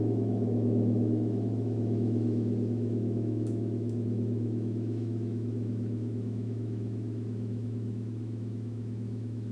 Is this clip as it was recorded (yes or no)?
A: no